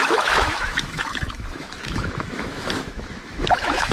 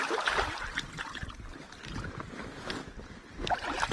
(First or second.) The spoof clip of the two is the first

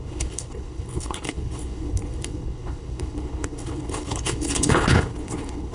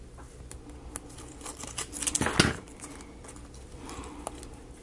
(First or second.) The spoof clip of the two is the first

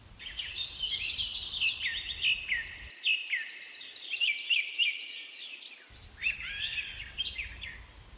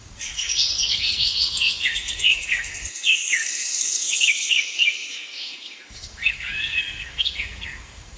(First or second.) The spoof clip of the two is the second